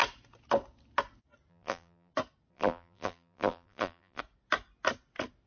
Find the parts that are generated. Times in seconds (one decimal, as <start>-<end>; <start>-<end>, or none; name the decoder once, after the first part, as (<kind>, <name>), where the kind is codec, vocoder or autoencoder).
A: 1.5-2.1 (vocoder, BigVGAN v2); 2.5-4.2